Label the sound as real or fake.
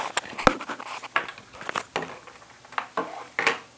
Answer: real